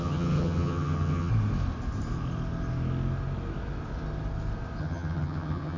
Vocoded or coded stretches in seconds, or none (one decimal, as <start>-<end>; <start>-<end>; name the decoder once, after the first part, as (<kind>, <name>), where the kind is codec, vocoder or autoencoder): 0.0-1.3 (vocoder, HiFi-GAN); 4.8-5.8